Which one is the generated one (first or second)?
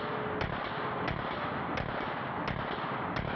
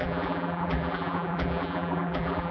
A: second